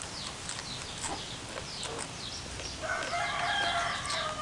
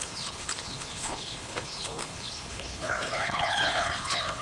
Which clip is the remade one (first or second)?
second